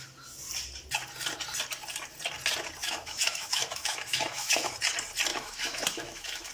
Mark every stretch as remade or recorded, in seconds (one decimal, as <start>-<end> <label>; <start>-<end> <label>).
0.0-2.8 recorded; 2.8-4.7 remade; 4.7-5.3 recorded; 5.3-6.5 remade